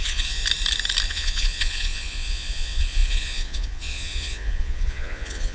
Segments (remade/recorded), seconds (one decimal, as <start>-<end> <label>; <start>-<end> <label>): 0.0-0.4 remade; 0.4-1.1 recorded; 1.1-5.5 remade

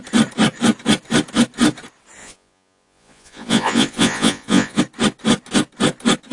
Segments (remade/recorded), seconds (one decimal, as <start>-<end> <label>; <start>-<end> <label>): 0.0-2.2 recorded; 2.2-4.8 remade; 4.8-6.3 recorded

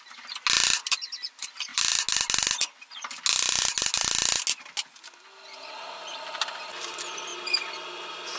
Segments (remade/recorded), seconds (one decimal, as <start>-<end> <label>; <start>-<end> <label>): 0.0-8.4 recorded

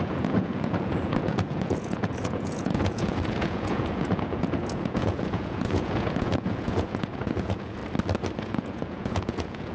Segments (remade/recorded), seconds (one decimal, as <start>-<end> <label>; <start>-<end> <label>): 0.0-7.8 remade; 7.8-8.4 recorded; 8.4-9.7 remade